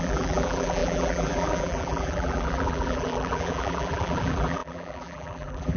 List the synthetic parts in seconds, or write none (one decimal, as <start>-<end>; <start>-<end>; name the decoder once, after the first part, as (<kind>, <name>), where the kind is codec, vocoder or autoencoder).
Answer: 0.0-5.8 (vocoder, BigVGAN v2)